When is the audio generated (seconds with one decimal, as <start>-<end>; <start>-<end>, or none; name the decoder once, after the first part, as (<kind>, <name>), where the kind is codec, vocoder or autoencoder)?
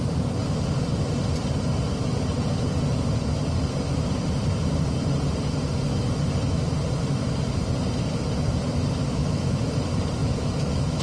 9.0-9.6 (autoencoder, DAC-VAE); 10.2-11.0